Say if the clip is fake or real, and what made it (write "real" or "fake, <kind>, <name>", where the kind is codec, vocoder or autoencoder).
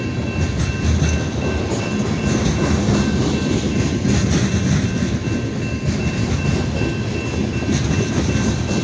real